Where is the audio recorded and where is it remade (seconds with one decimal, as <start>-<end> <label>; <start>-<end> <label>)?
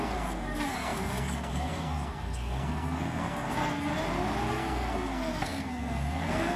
0.0-3.9 remade; 3.9-4.5 recorded; 4.5-6.6 remade